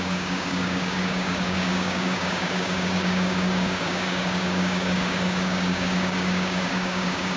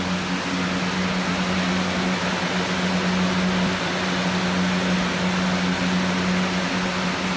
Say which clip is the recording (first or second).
second